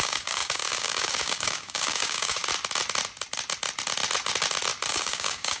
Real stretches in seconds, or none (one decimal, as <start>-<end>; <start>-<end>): 2.4-4.9